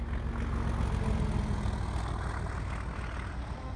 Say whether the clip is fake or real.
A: real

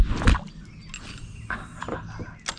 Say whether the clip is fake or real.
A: real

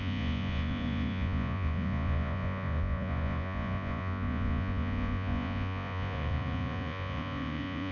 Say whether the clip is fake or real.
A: fake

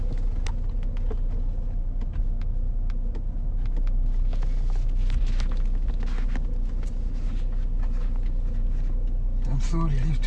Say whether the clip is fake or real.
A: real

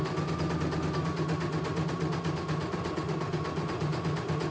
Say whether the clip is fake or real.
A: real